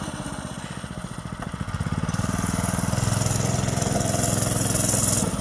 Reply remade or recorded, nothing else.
recorded